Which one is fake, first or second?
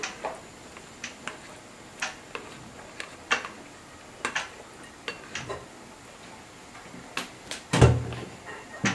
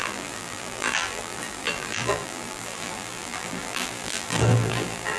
second